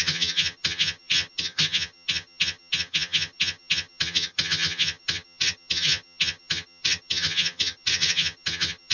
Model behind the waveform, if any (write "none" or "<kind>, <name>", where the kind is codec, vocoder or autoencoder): vocoder, HiFi-GAN